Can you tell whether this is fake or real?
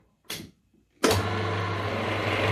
real